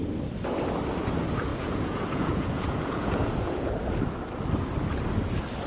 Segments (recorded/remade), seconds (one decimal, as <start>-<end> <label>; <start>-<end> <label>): 0.0-1.5 recorded; 1.5-3.7 remade; 3.7-5.7 recorded

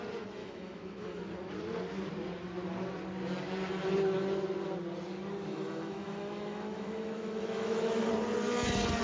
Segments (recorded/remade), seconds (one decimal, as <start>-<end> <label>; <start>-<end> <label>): 0.0-0.4 recorded; 0.4-1.2 remade; 1.2-5.5 recorded; 5.5-8.1 remade; 8.1-9.0 recorded

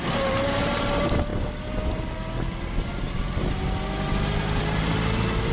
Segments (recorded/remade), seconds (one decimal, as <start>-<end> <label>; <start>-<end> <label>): 0.0-5.5 recorded

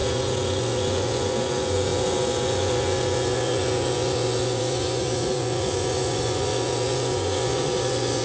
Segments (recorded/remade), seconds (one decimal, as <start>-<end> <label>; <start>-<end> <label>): 0.0-8.2 remade

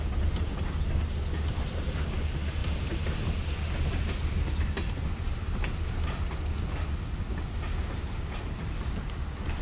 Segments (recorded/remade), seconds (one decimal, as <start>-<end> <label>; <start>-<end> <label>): 0.0-9.6 recorded

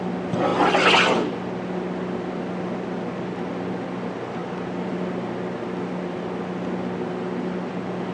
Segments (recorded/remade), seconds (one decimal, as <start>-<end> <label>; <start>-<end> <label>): 0.0-8.1 recorded

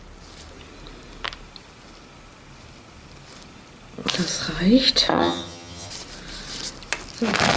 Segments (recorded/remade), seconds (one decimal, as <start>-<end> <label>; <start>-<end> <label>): 0.0-5.1 recorded; 5.1-5.9 remade; 5.9-7.6 recorded

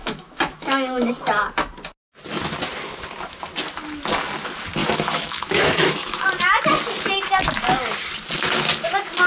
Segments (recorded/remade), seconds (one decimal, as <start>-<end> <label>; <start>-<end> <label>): 0.0-1.1 remade; 1.1-4.8 recorded; 4.8-6.3 remade; 6.3-9.3 recorded